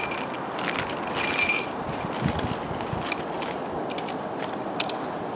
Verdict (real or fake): real